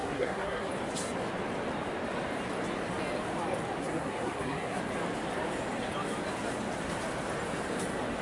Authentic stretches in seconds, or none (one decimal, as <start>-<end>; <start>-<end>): 0.7-3.8; 4.8-8.2

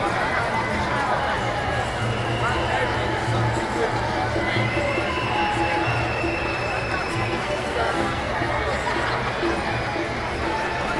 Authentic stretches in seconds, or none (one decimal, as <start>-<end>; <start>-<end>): 0.0-7.1; 8.3-11.0

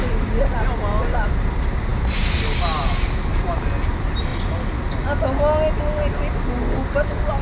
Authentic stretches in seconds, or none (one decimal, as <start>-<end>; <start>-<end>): 0.0-7.4

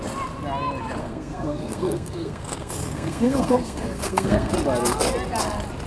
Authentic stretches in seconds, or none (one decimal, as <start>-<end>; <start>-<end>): 0.0-1.0; 4.5-5.9